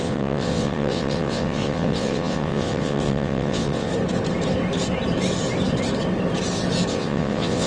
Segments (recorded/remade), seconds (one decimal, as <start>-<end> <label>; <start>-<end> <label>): 0.0-3.9 remade; 3.9-6.9 recorded; 6.9-7.7 remade